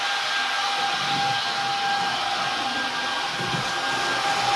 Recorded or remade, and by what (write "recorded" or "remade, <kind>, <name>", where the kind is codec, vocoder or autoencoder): recorded